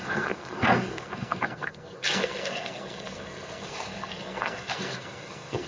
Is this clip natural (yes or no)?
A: no